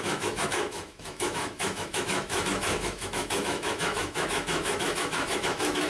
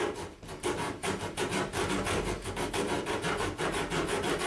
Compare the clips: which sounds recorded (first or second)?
second